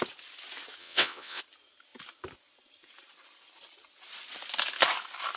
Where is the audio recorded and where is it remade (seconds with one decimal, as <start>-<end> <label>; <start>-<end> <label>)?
0.0-0.8 recorded; 0.8-1.4 remade; 1.4-5.4 recorded